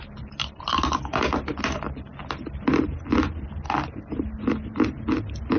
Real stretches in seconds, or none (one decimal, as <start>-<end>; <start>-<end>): 0.0-5.6